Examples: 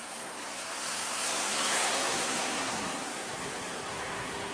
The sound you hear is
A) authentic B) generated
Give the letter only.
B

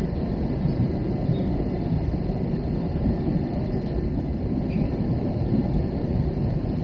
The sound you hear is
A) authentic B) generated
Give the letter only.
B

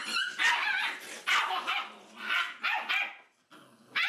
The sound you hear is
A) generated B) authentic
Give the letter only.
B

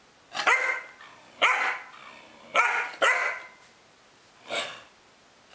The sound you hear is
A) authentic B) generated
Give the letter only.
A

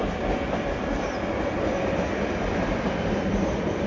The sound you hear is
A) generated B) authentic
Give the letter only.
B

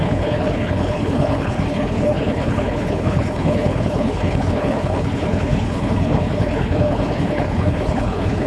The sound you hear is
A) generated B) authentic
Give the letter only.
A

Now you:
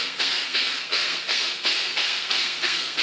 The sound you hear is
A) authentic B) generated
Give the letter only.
B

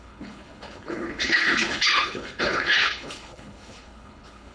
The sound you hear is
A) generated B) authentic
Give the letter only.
A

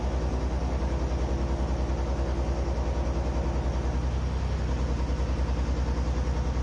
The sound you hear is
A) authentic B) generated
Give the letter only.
A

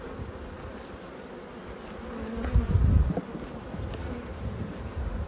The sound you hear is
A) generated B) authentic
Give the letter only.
B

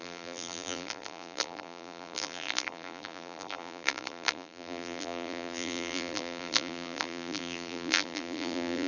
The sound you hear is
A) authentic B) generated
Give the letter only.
B